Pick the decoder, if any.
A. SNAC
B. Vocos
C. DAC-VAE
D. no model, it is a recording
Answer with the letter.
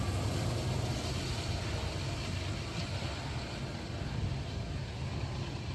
D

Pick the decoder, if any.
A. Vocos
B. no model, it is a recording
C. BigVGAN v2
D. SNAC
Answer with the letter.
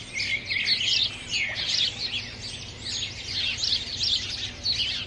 B